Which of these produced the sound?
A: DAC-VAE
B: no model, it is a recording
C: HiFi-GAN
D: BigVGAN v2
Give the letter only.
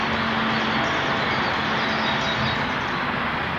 B